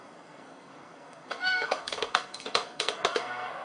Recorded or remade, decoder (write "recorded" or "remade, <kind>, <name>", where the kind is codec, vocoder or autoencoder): remade, codec, SNAC